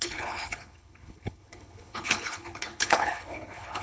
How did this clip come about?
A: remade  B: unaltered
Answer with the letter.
A